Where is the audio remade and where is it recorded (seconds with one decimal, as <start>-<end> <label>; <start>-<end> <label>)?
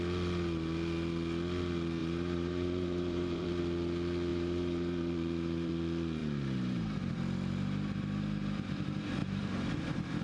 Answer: 0.0-2.0 recorded; 2.0-3.6 remade; 3.6-4.3 recorded; 4.3-5.7 remade; 5.7-6.2 recorded; 6.2-7.1 remade; 7.1-9.2 recorded; 9.2-9.7 remade; 9.7-10.2 recorded